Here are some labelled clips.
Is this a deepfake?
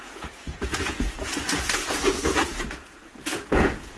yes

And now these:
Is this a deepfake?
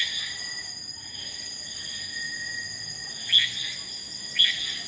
no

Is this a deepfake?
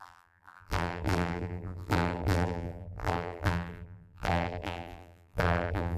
yes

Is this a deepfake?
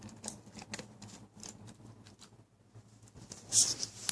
no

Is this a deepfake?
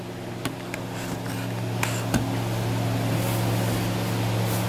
no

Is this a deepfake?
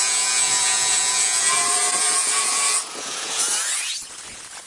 yes